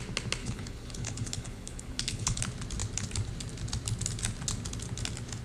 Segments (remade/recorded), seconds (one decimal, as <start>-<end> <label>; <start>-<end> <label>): 0.0-0.4 recorded; 0.4-2.4 remade; 2.4-5.4 recorded